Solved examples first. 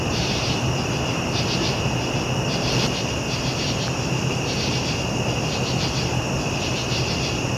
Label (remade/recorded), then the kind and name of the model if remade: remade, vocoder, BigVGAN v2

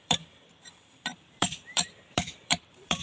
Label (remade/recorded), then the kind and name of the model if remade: remade, vocoder, BigVGAN v2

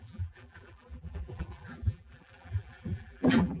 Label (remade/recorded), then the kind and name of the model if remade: remade, vocoder, BigVGAN v2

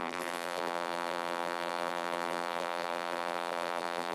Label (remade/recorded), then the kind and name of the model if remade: remade, vocoder, BigVGAN v2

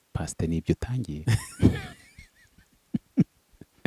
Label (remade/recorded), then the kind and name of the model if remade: recorded